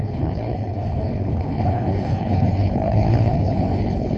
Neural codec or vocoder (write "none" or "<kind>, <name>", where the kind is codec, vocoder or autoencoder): codec, HILCodec